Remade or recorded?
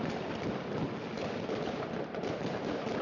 recorded